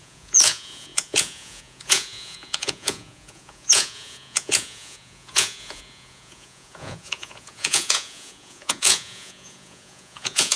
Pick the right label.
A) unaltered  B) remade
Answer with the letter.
B